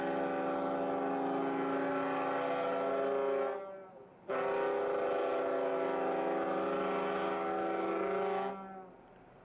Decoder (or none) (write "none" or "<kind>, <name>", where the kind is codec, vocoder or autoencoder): none